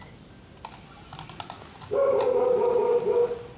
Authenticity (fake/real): real